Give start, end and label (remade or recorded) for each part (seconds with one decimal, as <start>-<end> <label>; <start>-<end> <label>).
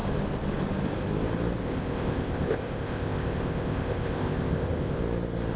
0.0-1.6 recorded; 1.6-5.0 remade; 5.0-5.6 recorded